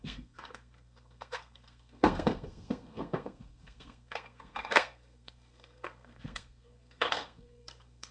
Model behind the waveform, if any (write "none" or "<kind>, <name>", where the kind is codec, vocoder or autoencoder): codec, SNAC